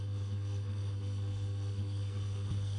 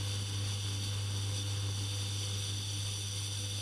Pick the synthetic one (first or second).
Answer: first